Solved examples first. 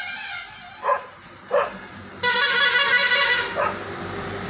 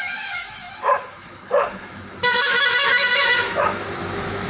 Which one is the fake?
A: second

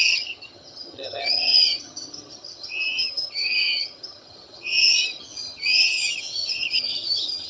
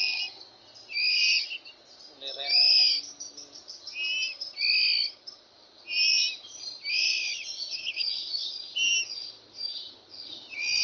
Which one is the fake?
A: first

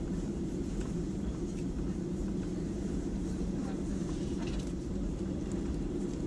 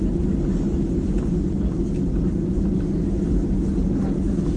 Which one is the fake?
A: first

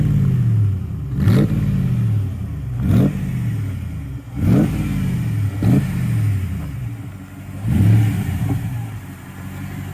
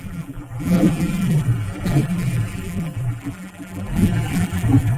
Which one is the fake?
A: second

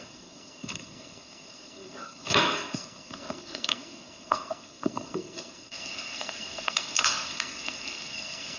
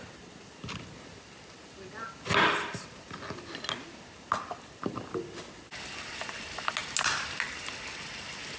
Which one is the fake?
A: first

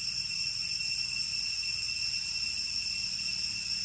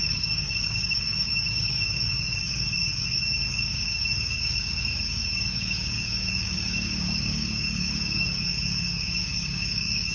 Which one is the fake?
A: second